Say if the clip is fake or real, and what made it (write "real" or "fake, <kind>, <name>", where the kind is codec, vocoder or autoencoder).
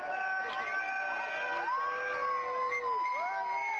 real